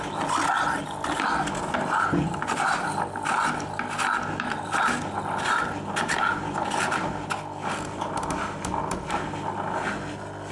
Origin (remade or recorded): recorded